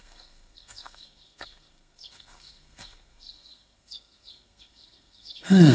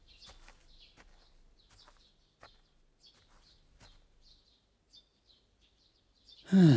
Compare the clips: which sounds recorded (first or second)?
second